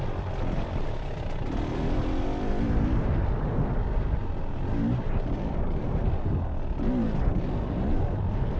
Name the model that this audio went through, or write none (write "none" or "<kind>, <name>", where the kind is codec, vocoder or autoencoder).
none